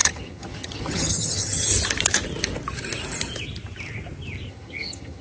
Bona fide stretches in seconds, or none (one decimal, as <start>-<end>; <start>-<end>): 1.7-4.5